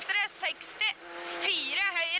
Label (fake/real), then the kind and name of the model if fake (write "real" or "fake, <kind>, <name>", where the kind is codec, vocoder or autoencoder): real